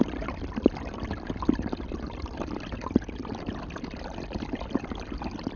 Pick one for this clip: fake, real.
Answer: real